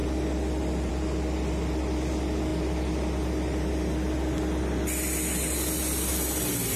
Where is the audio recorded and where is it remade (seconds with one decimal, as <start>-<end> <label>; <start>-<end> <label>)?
0.0-6.8 recorded